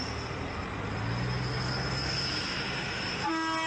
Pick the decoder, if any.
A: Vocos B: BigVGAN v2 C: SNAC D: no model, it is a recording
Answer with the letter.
D